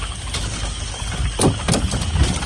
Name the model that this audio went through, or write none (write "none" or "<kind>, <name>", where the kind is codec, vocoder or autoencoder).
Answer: none